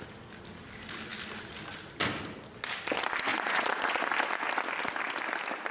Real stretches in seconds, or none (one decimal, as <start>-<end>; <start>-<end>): 0.0-3.3; 4.0-5.7

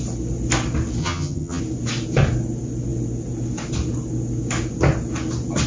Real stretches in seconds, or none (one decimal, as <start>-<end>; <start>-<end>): 0.0-1.0; 1.6-5.7

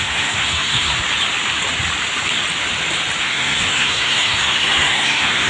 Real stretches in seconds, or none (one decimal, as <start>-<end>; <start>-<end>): 0.9-3.2